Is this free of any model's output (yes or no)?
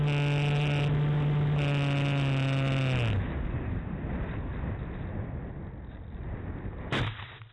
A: yes